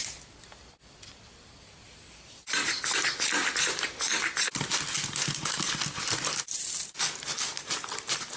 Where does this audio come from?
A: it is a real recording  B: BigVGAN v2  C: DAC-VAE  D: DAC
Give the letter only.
A